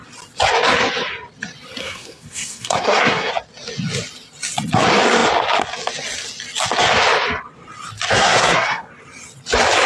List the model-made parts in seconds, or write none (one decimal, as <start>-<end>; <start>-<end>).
1.8-3.3; 8.1-8.9